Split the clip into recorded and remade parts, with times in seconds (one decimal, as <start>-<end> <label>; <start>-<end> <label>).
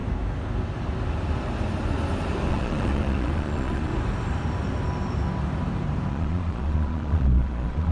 0.0-2.5 recorded; 2.5-3.9 remade; 3.9-6.1 recorded; 6.1-7.9 remade